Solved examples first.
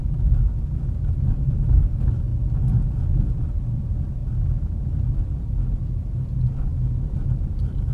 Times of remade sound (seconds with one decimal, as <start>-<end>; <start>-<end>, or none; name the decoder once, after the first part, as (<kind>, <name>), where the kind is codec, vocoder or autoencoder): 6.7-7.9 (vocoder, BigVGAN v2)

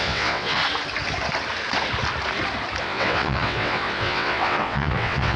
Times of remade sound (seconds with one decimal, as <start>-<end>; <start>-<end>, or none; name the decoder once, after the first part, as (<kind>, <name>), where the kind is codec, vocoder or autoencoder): 0.0-0.6 (vocoder, WaveNeXt); 2.8-5.4

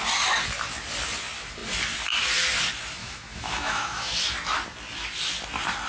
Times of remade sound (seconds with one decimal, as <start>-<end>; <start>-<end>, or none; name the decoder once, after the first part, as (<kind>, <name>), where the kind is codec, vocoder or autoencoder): 3.0-4.1 (autoencoder, DAC-VAE)

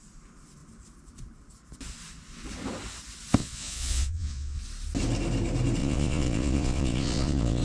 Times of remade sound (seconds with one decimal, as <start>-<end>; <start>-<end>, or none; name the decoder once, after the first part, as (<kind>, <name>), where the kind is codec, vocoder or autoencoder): 3.4-4.6 (vocoder, Vocos); 5.8-7.6

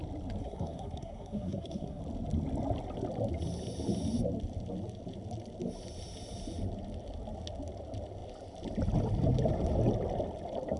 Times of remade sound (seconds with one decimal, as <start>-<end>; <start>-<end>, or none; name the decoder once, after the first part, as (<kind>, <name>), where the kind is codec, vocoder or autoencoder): 0.4-2.0 (codec, SNAC)

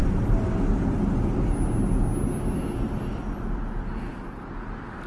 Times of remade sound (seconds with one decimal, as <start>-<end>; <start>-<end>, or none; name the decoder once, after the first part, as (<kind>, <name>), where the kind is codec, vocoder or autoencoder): none

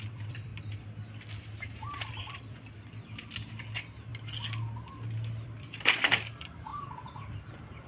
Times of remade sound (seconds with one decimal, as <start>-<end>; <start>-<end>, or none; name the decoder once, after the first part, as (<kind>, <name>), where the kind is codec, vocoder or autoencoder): 0.0-0.5 (vocoder, BigVGAN v2); 2.1-4.1; 5.3-7.9

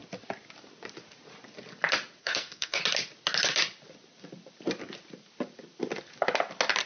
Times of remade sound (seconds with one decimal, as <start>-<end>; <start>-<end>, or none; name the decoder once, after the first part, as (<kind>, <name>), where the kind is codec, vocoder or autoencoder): 2.2-2.8 (codec, SNAC)